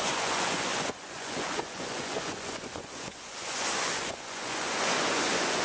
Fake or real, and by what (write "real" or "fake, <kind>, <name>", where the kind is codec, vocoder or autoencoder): fake, vocoder, Vocos